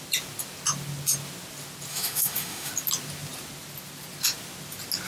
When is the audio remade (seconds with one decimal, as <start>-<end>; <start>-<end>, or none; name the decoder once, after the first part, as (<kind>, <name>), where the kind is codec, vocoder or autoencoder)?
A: 1.9-2.7 (autoencoder, DAC-VAE)